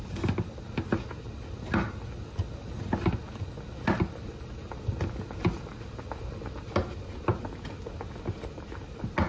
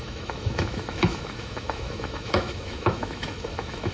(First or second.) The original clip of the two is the first